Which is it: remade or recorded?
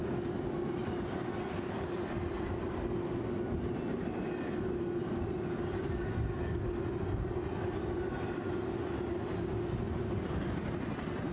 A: recorded